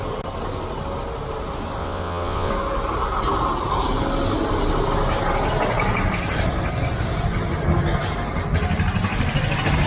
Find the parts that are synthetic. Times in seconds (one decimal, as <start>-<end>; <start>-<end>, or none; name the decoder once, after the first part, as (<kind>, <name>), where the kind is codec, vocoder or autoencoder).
1.8-2.5 (vocoder, WaveNeXt)